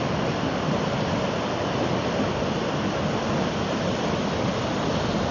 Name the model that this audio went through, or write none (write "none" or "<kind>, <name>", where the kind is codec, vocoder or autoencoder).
none